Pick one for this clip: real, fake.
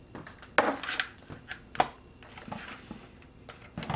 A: real